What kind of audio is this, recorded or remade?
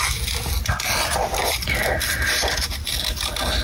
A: recorded